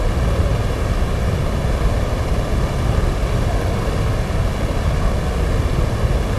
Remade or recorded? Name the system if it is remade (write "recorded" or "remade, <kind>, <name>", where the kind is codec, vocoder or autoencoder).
recorded